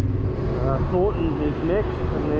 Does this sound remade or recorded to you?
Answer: recorded